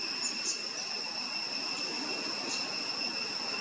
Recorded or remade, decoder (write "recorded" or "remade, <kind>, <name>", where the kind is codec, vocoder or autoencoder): recorded